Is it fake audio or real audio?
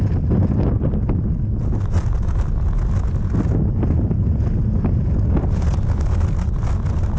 real